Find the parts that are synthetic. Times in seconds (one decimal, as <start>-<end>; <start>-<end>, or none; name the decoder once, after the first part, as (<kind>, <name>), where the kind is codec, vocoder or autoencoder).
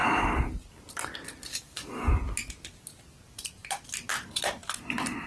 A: 1.5-2.1 (codec, DAC)